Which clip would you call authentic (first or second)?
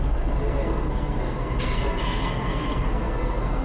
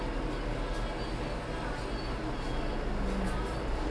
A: second